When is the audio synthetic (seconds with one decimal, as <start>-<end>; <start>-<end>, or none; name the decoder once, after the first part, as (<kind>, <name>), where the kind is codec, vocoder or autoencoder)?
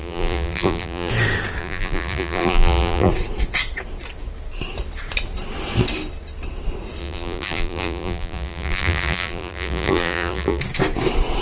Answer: 0.0-1.1 (vocoder, BigVGAN v2); 1.6-3.1; 7.0-10.6